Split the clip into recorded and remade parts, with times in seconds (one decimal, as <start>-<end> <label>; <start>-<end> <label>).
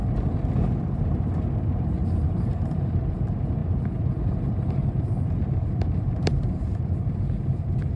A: 0.0-1.6 recorded; 1.6-8.0 remade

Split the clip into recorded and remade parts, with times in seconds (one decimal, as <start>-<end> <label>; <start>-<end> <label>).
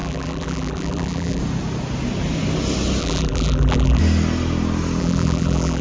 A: 0.0-1.4 remade; 1.4-3.0 recorded; 3.0-4.0 remade; 4.0-5.0 recorded; 5.0-5.8 remade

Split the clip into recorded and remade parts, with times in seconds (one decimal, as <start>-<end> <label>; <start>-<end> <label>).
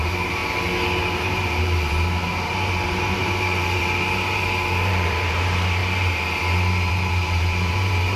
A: 0.0-0.4 remade; 0.4-1.0 recorded; 1.0-5.8 remade; 5.8-6.9 recorded; 6.9-8.2 remade